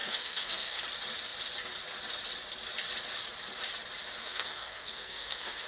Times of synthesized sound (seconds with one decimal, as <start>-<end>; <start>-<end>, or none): 0.0-0.8; 4.2-5.7